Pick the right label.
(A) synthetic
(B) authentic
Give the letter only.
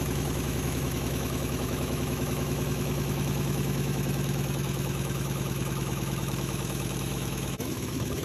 A